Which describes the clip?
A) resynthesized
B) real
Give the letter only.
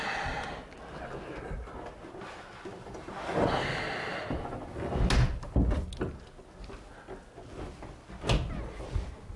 B